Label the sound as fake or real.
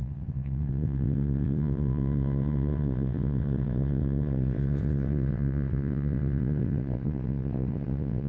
fake